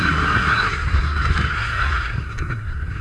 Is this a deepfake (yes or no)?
yes